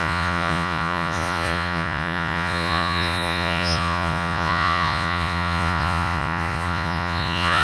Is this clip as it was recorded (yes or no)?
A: no